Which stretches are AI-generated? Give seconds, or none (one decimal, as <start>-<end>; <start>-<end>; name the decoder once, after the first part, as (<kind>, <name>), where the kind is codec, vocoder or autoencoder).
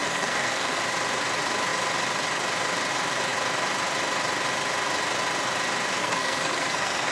0.0-0.8 (codec, SNAC); 6.0-7.1